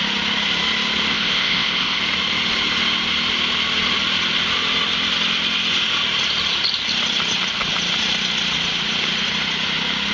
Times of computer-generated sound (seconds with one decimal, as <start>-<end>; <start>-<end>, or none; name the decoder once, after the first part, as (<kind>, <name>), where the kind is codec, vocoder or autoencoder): 1.1-2.0 (codec, ZipCodec)